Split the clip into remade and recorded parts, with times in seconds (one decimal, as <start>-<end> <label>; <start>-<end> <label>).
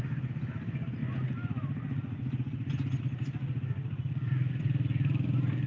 0.0-5.7 recorded